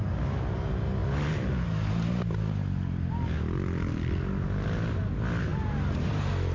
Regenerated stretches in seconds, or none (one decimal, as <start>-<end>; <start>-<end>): none